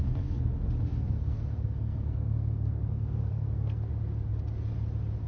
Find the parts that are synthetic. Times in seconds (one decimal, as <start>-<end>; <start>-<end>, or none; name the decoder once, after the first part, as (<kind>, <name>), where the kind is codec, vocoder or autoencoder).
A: 0.0-0.5 (codec, SNAC); 0.9-3.9